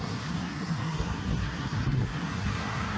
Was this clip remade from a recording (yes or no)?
yes